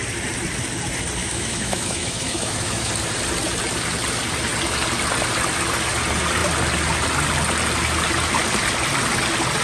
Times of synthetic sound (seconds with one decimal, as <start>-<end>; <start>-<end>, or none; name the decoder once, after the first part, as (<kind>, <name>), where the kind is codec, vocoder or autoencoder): 1.2-2.9 (autoencoder, DAC-VAE)